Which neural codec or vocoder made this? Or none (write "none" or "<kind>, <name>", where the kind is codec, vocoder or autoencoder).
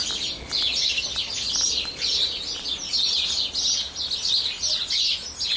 none